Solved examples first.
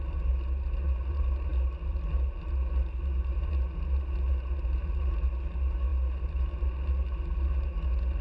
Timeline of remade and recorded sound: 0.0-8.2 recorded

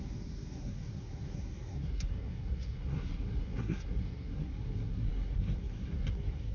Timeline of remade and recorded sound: 0.0-6.5 remade